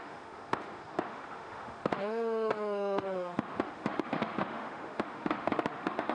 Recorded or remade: remade